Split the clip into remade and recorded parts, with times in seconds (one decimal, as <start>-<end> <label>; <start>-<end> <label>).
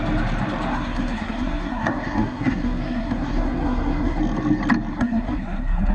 0.0-0.7 recorded; 0.7-4.2 remade; 4.2-4.9 recorded; 4.9-5.9 remade